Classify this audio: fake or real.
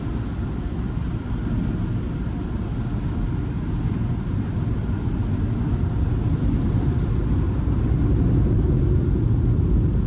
real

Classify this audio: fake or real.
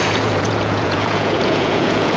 fake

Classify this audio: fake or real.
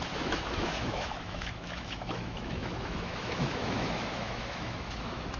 fake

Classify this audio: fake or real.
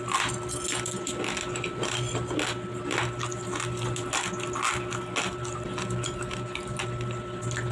real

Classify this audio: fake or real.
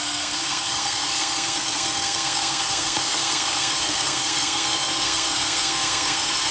fake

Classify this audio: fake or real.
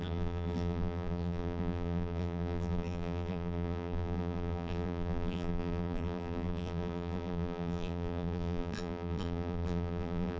fake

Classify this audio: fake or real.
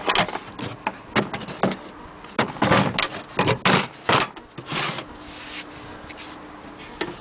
real